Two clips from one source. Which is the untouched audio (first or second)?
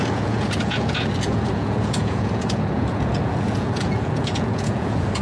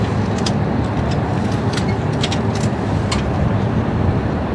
second